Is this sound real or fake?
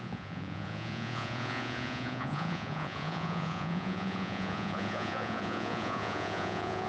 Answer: fake